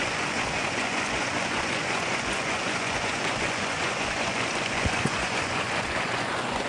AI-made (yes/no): yes